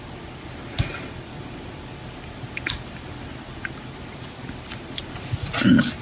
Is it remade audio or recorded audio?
recorded